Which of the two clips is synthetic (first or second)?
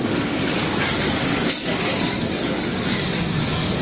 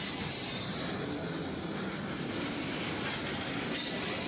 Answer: first